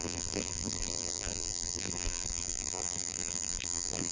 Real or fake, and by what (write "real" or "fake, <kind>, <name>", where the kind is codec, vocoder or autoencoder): fake, vocoder, BigVGAN v2